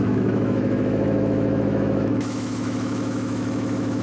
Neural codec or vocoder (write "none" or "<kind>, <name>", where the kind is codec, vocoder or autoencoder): autoencoder, DAC-VAE